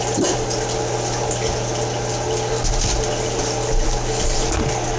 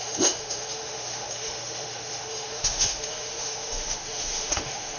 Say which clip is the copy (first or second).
second